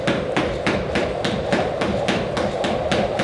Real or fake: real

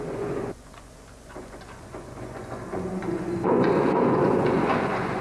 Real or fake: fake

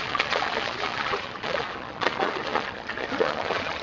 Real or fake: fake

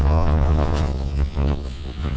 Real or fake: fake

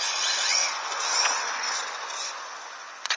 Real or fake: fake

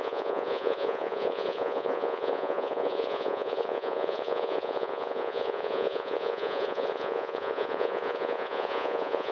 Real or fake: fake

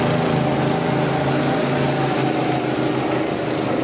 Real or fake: real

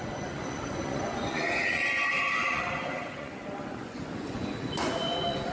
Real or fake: fake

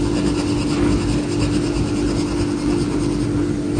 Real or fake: real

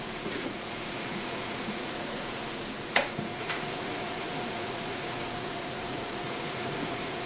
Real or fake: fake